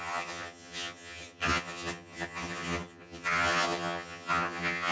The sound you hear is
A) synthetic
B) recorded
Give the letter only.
A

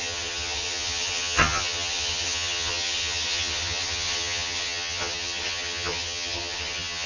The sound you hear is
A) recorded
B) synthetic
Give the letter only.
B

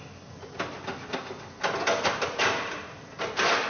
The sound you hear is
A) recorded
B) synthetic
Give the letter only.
A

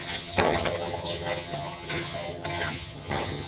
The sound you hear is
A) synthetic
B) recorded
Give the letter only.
A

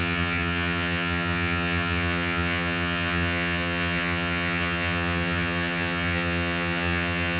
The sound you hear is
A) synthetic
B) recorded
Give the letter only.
A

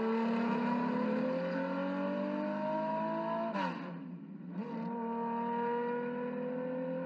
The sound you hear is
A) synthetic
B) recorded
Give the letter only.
B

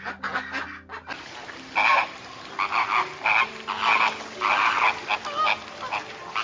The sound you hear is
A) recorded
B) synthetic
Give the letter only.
A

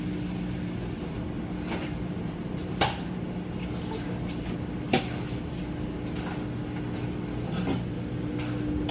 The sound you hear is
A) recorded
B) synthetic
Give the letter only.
A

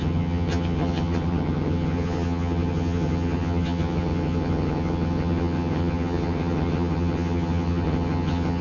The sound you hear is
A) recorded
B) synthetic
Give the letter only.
B